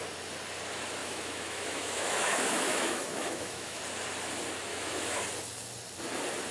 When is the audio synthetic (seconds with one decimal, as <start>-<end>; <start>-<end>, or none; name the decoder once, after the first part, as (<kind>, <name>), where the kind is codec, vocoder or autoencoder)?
1.0-3.8 (autoencoder, DAC-VAE); 4.7-5.2